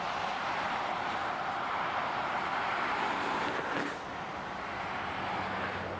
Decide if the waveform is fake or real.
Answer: real